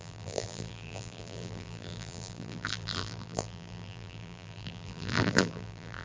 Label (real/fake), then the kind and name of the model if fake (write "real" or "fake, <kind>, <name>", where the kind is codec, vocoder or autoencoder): fake, vocoder, BigVGAN v2